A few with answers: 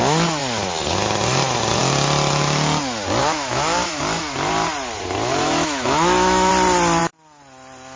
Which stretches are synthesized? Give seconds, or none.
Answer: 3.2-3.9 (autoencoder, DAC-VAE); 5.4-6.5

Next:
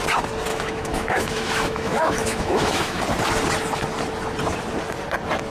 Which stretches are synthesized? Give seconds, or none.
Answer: 0.5-3.0 (autoencoder, DAC-VAE)

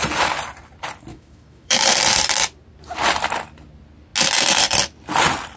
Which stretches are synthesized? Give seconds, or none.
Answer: 1.1-1.8 (autoencoder, DAC-VAE)

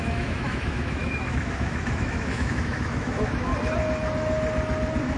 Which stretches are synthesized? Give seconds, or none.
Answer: 0.0-3.5 (autoencoder, DAC-VAE)

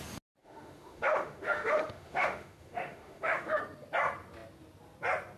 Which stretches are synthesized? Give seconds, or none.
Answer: 0.4-3.6 (autoencoder, DAC-VAE)